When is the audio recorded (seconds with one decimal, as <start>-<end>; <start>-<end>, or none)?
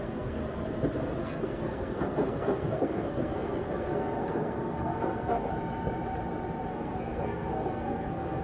0.4-1.2; 5.5-6.7